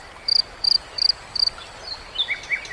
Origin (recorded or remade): recorded